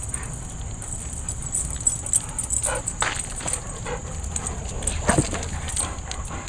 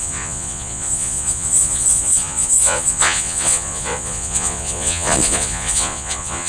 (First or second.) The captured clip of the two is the first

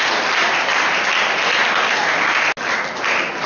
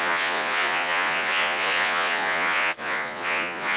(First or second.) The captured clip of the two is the first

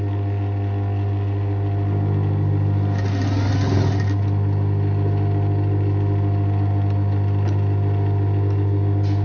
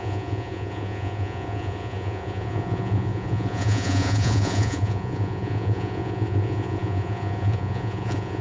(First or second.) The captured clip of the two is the first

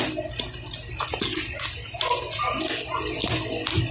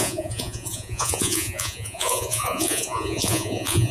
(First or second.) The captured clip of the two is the first